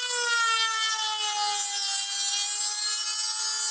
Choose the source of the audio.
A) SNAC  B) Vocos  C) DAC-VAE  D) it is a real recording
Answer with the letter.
D